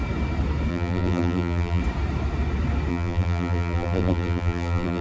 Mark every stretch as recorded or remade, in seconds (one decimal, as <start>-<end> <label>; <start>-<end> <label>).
0.0-0.7 recorded; 0.7-1.8 remade; 1.8-2.9 recorded; 2.9-5.0 remade